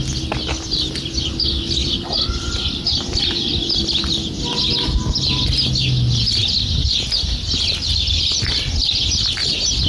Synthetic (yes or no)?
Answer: no